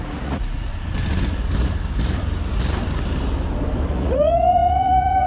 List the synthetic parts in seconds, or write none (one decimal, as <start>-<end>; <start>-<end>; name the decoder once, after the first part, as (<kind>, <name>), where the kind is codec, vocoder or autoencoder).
0.0-0.7 (vocoder, Vocos); 3.9-5.3